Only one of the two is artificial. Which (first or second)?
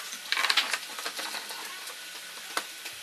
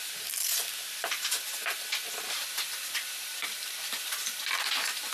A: second